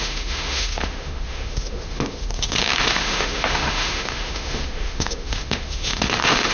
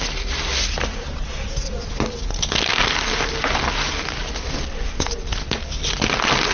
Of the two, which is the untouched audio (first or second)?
second